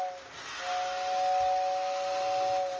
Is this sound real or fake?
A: real